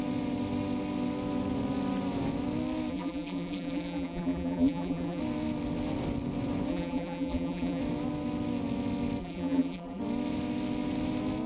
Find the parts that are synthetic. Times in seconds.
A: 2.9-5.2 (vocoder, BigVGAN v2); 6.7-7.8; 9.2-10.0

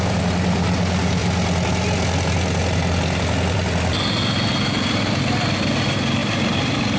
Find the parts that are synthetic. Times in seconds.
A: none

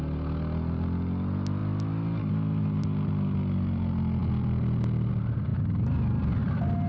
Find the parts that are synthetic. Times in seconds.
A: none

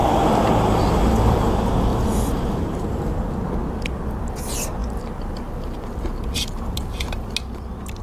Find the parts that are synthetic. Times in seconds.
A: 0.0-1.5 (vocoder, BigVGAN v2); 1.9-3.3

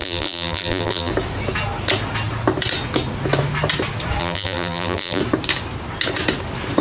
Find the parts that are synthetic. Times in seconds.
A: 0.0-1.1 (vocoder, BigVGAN v2); 4.2-5.2

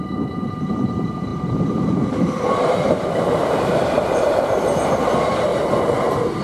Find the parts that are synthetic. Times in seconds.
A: 0.0-5.5 (vocoder, BigVGAN v2)

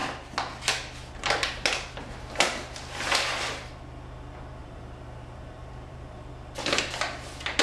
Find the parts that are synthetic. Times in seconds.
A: 4.6-6.3 (vocoder, BigVGAN v2)